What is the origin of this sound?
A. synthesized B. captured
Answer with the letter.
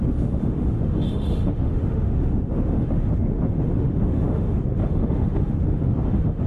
A